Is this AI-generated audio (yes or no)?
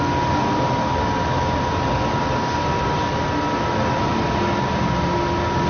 no